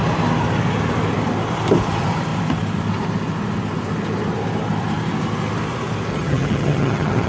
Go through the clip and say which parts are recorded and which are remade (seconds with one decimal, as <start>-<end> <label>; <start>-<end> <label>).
0.0-6.1 recorded; 6.1-7.3 remade